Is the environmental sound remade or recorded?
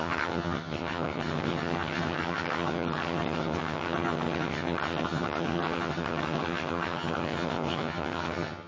remade